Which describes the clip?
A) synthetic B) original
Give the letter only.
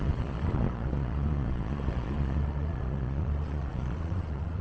A